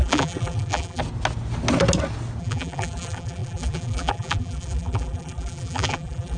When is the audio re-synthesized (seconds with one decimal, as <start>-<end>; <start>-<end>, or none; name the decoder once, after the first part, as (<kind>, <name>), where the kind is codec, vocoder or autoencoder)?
0.0-1.0 (vocoder, BigVGAN v2); 2.4-6.4